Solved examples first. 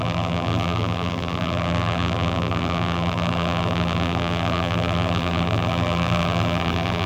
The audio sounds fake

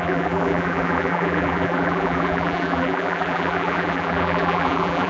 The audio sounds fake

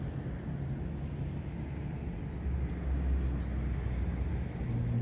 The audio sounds real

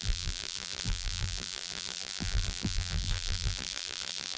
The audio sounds fake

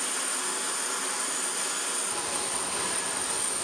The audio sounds real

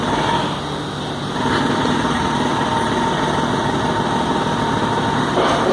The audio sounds real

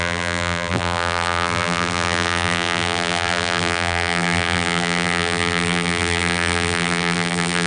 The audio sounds fake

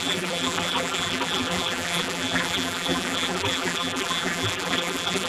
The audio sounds fake